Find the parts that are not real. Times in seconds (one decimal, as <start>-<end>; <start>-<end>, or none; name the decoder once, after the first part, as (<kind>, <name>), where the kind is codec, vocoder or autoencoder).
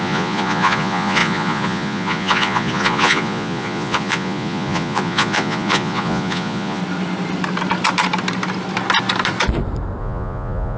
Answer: 0.0-6.8 (vocoder, Vocos); 10.0-10.8